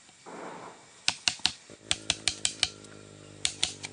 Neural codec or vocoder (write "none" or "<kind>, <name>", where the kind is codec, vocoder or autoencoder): none